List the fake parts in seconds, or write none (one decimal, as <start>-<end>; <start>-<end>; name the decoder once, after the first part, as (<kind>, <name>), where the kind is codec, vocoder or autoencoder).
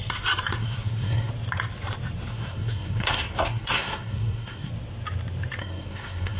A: 0.6-1.3 (codec, SNAC); 2.3-4.7; 5.6-6.4